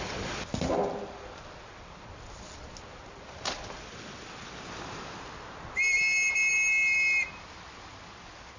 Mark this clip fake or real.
real